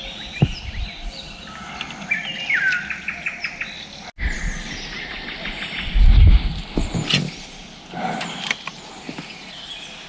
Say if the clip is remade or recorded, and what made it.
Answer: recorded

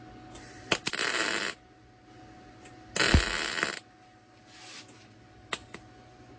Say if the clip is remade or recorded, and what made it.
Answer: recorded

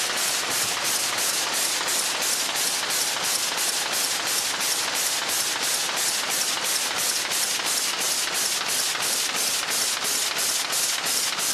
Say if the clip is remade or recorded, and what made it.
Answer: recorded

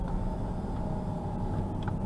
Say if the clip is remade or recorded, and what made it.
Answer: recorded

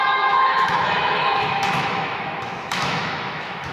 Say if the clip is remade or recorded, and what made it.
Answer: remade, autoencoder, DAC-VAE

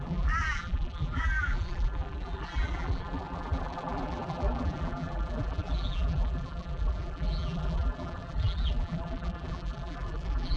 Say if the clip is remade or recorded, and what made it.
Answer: remade, vocoder, BigVGAN v2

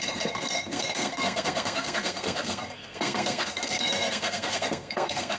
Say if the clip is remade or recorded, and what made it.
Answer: remade, codec, SNAC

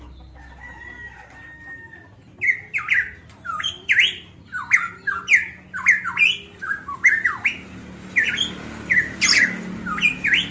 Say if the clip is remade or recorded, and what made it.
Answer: recorded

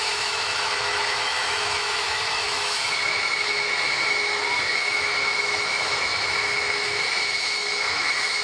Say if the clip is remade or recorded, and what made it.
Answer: remade, autoencoder, DAC-VAE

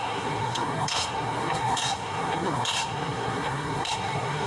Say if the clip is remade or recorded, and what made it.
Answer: remade, codec, SNAC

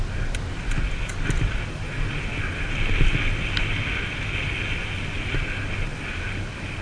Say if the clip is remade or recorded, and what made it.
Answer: recorded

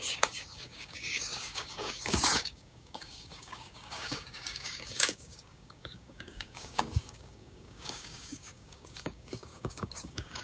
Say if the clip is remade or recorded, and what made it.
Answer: remade, codec, DAC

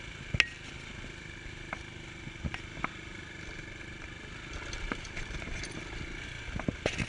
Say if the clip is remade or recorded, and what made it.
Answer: recorded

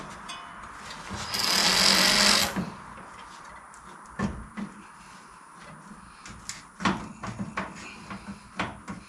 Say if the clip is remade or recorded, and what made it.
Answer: recorded